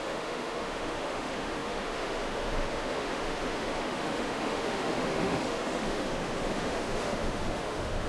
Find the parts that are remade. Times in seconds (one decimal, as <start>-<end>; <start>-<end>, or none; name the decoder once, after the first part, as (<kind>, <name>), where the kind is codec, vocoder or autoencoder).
0.0-8.1 (autoencoder, DAC-VAE)